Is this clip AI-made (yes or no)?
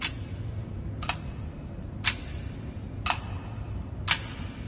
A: no